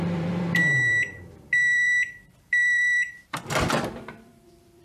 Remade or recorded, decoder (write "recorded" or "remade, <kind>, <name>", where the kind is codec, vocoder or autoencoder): remade, vocoder, BigVGAN v2